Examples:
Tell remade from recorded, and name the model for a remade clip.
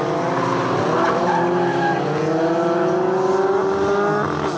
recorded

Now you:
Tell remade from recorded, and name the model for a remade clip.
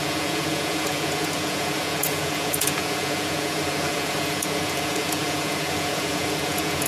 remade, vocoder, Vocos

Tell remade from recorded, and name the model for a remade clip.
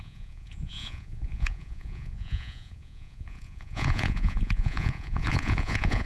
remade, vocoder, Vocos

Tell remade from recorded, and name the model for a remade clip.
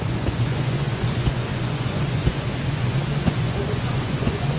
remade, vocoder, Vocos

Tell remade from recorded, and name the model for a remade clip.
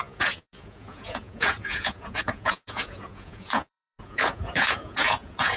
remade, vocoder, Vocos